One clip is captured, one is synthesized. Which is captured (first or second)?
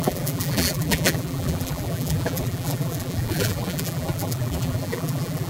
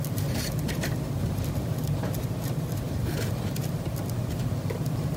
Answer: second